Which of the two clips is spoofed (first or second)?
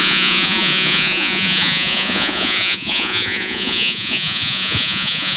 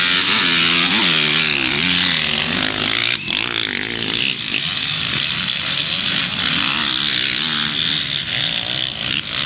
first